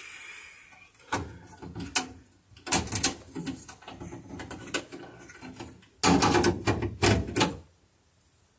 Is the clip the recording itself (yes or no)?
yes